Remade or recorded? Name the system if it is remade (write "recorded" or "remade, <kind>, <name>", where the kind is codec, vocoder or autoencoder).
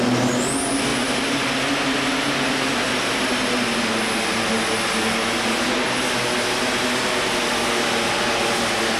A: recorded